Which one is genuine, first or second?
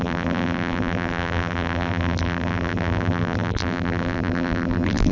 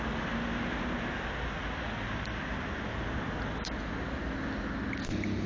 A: second